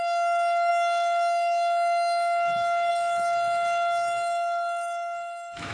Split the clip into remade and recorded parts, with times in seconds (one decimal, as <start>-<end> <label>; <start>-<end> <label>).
0.0-5.7 remade